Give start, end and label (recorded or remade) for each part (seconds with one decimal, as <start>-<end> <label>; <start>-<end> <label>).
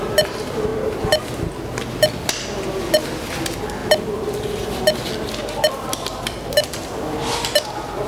0.0-8.1 recorded